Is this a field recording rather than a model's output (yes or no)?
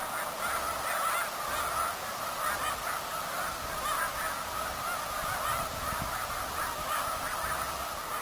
yes